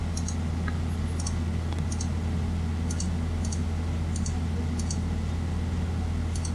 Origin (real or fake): real